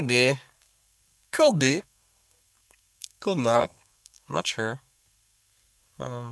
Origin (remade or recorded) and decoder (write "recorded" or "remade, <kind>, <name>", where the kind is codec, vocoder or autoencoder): remade, codec, SNAC